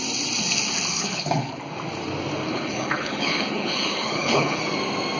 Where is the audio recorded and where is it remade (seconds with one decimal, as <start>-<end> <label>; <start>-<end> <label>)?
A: 0.0-0.9 recorded; 0.9-1.6 remade; 1.6-2.5 recorded; 2.5-4.6 remade; 4.6-5.2 recorded